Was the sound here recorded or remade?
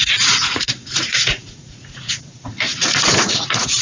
remade